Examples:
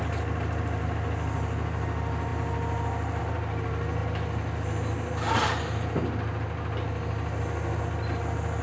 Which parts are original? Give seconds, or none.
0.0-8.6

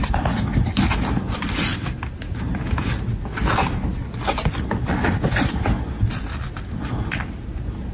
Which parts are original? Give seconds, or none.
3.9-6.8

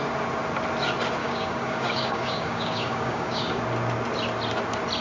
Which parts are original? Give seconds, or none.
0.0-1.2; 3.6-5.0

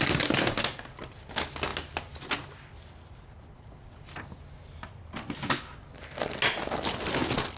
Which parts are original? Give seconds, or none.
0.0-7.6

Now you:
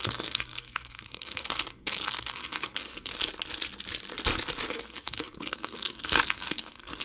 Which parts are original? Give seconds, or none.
3.1-4.7